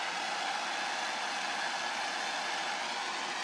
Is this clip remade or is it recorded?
recorded